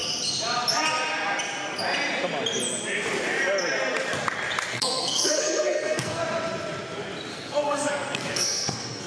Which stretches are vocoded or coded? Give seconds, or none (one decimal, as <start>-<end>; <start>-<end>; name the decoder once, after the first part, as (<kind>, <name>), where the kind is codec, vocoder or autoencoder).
4.7-6.2 (codec, SNAC); 7.3-9.1